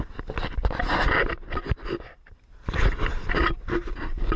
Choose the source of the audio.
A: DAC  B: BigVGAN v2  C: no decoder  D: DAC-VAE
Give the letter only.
C